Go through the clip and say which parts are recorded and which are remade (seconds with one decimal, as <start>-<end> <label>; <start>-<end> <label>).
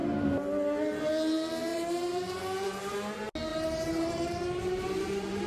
0.0-1.7 recorded; 1.7-2.9 remade; 2.9-3.5 recorded; 3.5-5.5 remade